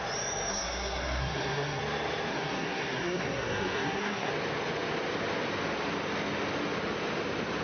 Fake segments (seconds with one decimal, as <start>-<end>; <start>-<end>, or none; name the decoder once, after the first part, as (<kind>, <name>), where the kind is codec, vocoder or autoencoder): 0.5-1.8 (codec, SNAC); 2.3-4.3

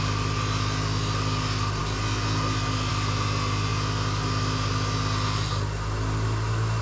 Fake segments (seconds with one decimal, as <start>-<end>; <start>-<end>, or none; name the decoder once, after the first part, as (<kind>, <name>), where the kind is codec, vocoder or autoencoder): none

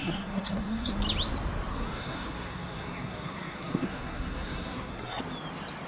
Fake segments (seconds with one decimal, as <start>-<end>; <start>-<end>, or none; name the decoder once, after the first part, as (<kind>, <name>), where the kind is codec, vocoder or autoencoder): 0.0-0.9 (codec, SNAC); 1.7-5.2

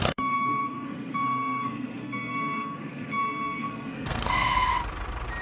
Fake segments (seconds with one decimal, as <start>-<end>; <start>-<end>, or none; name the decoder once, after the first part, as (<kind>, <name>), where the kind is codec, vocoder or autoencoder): 0.0-4.7 (codec, SNAC)

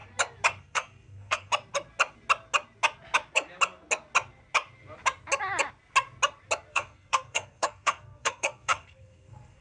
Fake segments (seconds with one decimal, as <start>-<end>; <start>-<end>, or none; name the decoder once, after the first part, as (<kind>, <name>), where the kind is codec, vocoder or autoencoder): 0.6-1.5 (codec, SNAC); 6.7-9.6

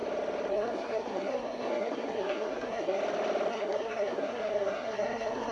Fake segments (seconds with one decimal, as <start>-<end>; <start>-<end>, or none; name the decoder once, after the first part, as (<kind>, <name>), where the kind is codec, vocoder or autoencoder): 0.5-3.0 (codec, SNAC); 3.5-5.5